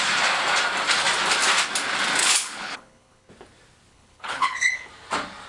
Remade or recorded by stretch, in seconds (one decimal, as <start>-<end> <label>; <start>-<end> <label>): 0.0-2.2 recorded; 2.2-3.3 remade; 3.3-3.9 recorded; 3.9-4.9 remade; 4.9-5.5 recorded